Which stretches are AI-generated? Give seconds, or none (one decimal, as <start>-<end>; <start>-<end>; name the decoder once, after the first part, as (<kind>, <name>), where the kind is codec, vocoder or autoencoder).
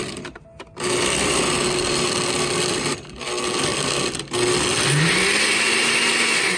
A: none